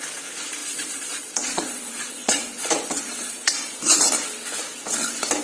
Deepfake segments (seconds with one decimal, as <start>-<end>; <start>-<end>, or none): 0.6-3.8